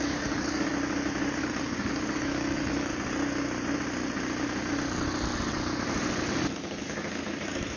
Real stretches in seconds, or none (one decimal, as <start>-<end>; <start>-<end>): 0.7-1.4; 2.9-6.5

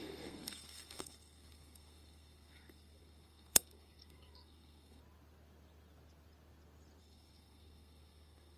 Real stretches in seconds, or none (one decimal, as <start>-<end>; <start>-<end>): 5.0-7.0

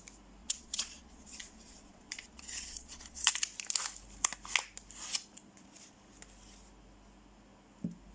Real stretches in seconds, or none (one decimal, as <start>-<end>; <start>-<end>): 0.0-0.4; 3.3-8.1

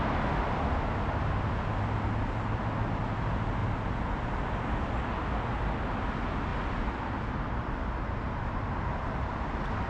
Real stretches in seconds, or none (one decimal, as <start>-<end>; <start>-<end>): 0.0-9.9

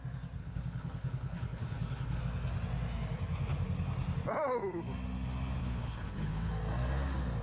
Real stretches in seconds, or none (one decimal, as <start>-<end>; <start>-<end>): 0.0-0.4; 2.2-5.6; 6.5-7.4

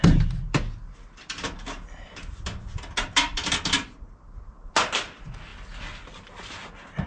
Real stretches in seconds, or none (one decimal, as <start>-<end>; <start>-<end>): 0.0-7.1

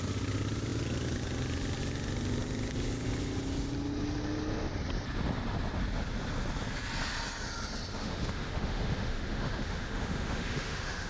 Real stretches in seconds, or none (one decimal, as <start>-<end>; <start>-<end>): 0.0-7.9